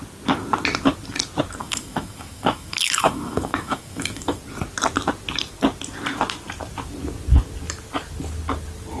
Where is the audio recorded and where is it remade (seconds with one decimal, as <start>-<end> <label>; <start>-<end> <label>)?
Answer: 0.0-1.6 recorded; 1.6-4.4 remade; 4.4-9.0 recorded

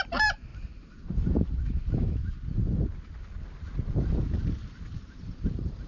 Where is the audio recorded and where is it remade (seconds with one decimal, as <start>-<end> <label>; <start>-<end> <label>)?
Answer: 0.0-0.5 recorded; 0.5-1.8 remade; 1.8-4.6 recorded; 4.6-5.9 remade

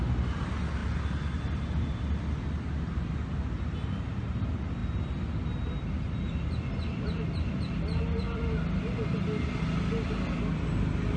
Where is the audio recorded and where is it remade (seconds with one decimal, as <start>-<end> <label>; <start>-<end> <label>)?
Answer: 0.0-11.2 recorded

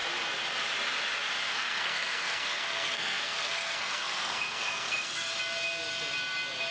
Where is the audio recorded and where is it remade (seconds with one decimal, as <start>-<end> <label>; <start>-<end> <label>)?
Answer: 0.0-1.5 recorded; 1.5-5.3 remade; 5.3-6.7 recorded

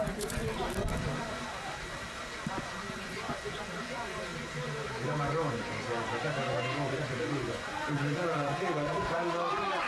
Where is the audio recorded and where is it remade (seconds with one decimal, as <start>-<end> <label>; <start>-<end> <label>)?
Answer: 0.0-0.4 remade; 0.4-2.5 recorded; 2.5-4.3 remade; 4.3-6.9 recorded; 6.9-9.9 remade

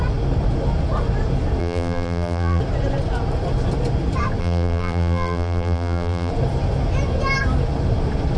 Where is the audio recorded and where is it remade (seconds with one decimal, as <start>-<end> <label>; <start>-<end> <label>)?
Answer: 0.0-1.6 recorded; 1.6-2.6 remade; 2.6-4.4 recorded; 4.4-6.3 remade; 6.3-8.4 recorded

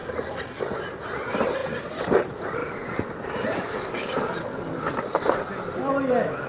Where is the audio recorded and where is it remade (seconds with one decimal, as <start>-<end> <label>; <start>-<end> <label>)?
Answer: 0.0-2.6 recorded; 2.6-5.4 remade; 5.4-6.5 recorded

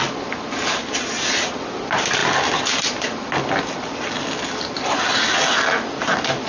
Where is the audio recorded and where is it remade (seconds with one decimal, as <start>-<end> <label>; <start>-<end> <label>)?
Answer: 0.0-6.5 recorded